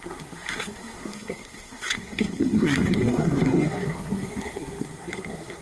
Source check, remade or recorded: remade